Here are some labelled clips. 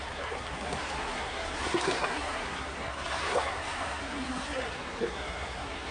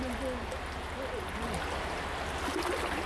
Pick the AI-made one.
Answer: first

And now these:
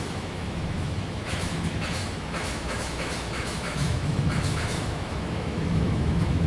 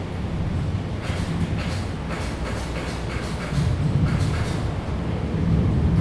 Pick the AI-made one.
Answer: first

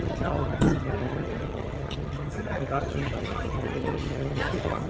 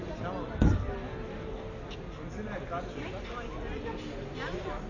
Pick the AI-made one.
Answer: first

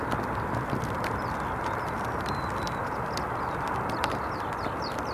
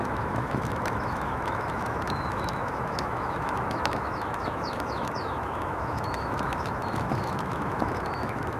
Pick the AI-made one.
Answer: second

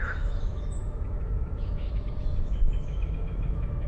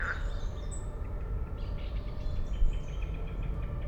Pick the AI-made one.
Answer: first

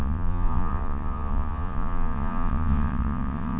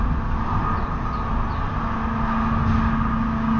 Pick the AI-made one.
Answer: first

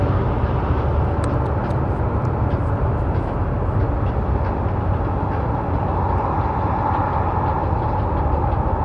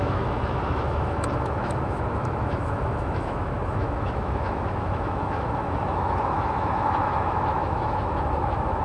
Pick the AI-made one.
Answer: second